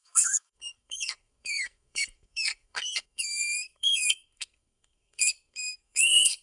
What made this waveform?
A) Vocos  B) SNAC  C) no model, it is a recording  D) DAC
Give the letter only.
B